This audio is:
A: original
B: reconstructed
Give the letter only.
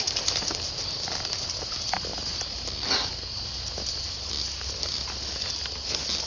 A